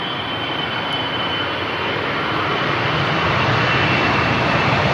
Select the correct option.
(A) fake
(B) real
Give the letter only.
B